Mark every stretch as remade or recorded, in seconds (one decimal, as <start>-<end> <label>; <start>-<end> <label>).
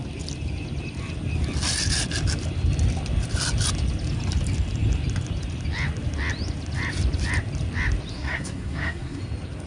0.0-8.1 recorded; 8.1-9.2 remade; 9.2-9.7 recorded